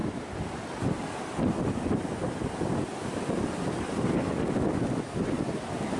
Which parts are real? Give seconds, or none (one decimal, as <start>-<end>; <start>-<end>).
0.0-6.0

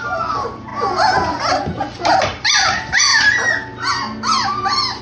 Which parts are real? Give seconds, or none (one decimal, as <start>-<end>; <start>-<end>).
0.7-2.1; 3.1-5.0

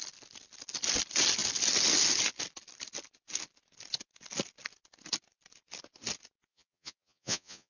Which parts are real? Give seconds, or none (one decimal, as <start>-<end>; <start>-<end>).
0.0-6.5

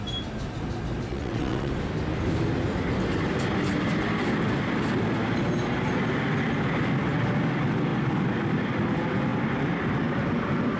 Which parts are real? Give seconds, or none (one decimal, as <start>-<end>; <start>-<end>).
0.0-1.1; 1.7-10.8

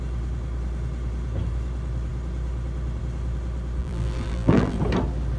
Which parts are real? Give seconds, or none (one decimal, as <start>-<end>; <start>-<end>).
0.0-3.8; 4.8-5.4